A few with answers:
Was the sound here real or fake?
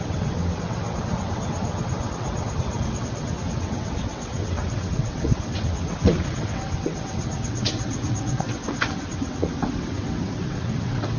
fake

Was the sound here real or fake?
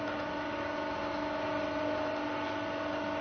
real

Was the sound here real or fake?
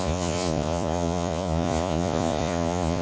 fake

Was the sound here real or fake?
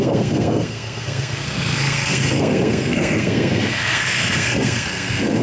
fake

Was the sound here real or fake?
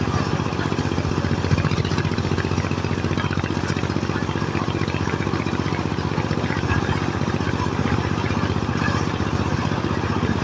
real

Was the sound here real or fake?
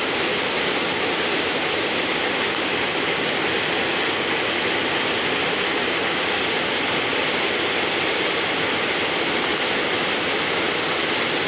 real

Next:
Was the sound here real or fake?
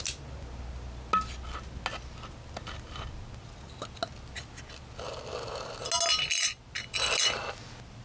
real